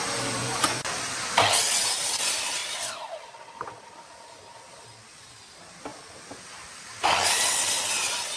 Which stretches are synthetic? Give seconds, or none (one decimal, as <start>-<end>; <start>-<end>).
0.4-0.9